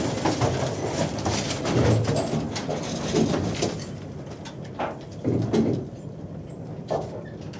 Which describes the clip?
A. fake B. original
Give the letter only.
B